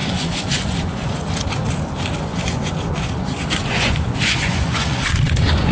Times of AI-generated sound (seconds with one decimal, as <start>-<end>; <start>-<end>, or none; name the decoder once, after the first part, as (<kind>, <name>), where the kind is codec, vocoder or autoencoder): 0.0-1.3 (vocoder, Vocos); 2.3-5.7